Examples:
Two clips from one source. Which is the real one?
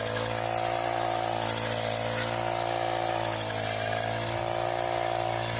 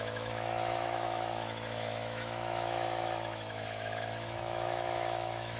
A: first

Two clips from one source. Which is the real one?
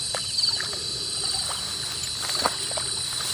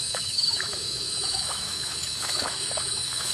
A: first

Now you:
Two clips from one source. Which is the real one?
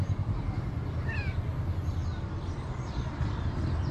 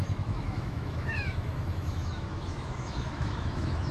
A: first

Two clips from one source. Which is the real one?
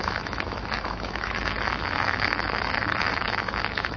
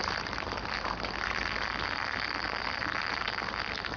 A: second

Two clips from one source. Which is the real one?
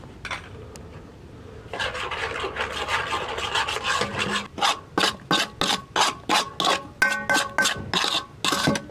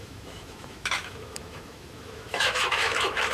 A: first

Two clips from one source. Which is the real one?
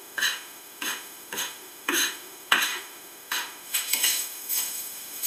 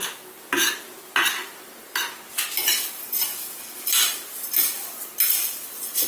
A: second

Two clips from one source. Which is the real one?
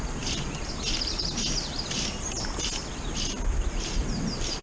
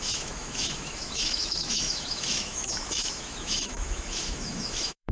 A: first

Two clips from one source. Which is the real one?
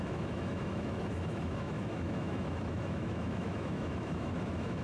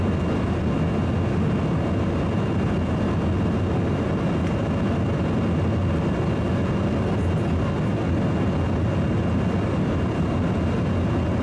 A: second